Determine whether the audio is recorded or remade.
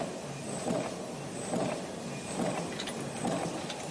recorded